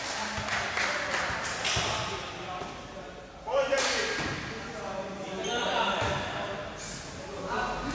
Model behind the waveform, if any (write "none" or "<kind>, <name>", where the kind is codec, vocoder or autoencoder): none